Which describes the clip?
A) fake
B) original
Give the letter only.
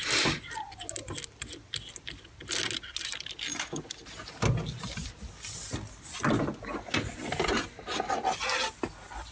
B